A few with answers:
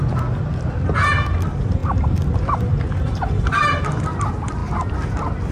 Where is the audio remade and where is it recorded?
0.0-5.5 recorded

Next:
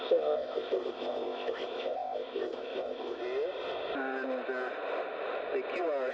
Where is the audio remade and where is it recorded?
0.0-3.2 remade; 3.2-6.1 recorded

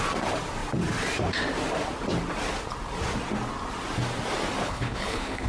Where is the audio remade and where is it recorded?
0.0-4.6 recorded; 4.6-5.5 remade

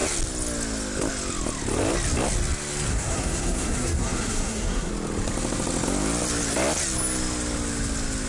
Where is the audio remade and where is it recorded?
0.0-2.9 recorded; 2.9-4.9 remade; 4.9-8.3 recorded

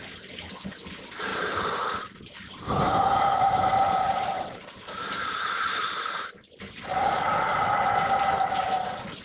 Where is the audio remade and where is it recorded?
0.0-1.3 recorded; 1.3-6.3 remade; 6.3-9.2 recorded

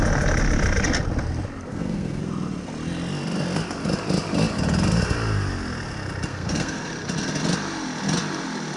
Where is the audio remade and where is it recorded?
0.0-1.7 recorded; 1.7-2.2 remade; 2.2-6.3 recorded; 6.3-6.9 remade; 6.9-8.8 recorded